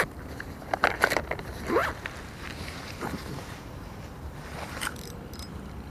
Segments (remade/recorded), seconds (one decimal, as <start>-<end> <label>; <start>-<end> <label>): 0.0-5.9 remade